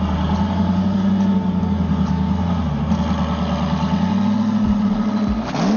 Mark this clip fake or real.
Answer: real